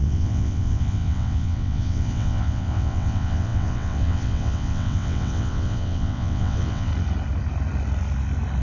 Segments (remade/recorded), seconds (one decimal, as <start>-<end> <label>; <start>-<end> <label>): 0.0-6.9 remade; 6.9-8.6 recorded

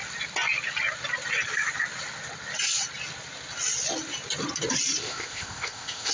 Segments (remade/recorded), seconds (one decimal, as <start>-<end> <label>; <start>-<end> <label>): 0.0-5.0 recorded; 5.0-6.1 remade

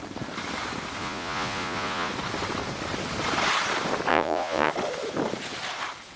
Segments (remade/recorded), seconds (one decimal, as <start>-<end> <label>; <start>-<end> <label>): 0.0-1.0 recorded; 1.0-2.1 remade; 2.1-4.1 recorded; 4.1-4.7 remade; 4.7-6.2 recorded